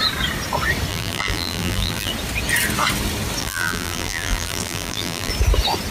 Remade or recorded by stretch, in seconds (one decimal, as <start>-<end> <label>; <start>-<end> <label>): 0.0-0.9 recorded; 0.9-2.1 remade; 2.1-3.4 recorded; 3.4-5.3 remade; 5.3-5.9 recorded